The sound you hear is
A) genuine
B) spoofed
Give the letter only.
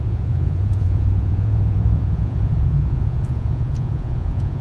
B